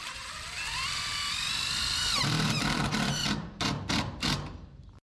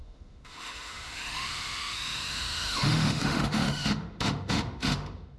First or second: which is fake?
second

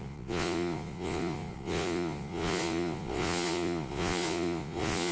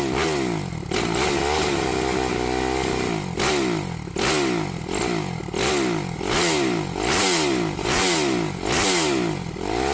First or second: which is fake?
first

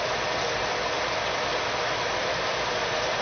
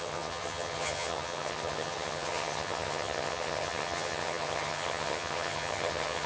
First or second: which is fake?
second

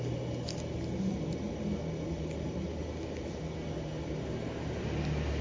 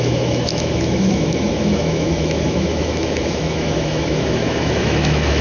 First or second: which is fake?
second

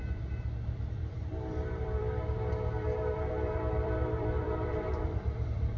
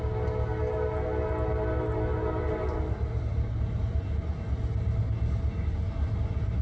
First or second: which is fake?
first